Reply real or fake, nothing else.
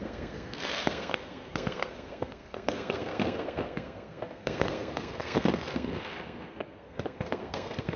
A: fake